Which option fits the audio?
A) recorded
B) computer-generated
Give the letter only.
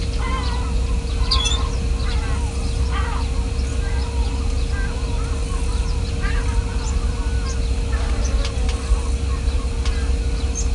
A